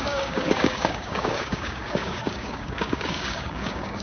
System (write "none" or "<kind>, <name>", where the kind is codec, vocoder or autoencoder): codec, DAC